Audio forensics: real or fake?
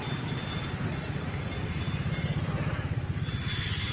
real